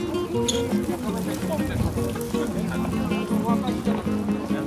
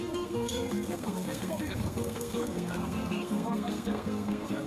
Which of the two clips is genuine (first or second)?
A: first